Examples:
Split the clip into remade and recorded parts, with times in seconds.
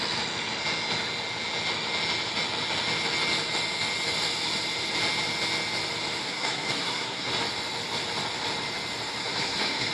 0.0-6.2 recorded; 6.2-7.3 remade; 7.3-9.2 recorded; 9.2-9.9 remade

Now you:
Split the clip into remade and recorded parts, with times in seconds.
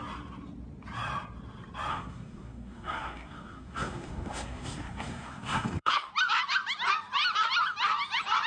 0.0-1.9 recorded; 1.9-6.1 remade; 6.1-8.5 recorded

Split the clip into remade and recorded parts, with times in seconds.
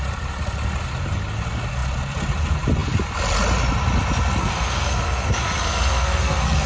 0.0-4.4 recorded; 4.4-6.7 remade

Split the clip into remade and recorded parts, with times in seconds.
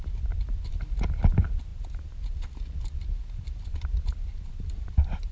0.0-5.3 recorded